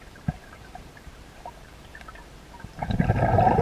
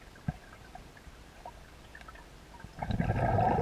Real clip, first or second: second